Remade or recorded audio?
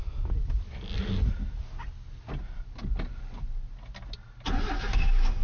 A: recorded